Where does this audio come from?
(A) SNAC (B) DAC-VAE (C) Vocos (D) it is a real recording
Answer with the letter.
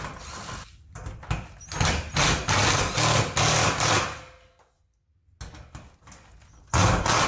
D